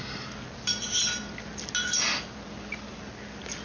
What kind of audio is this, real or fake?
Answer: real